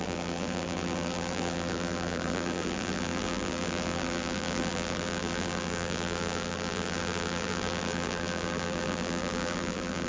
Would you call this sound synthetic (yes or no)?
yes